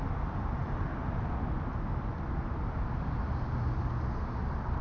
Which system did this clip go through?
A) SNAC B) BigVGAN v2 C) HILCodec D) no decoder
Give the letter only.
D